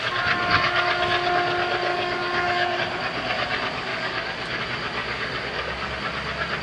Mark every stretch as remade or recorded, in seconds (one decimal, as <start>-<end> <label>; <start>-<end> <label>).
0.0-1.9 recorded; 1.9-2.8 remade; 2.8-3.9 recorded; 3.9-4.6 remade; 4.6-5.0 recorded; 5.0-5.9 remade; 5.9-6.6 recorded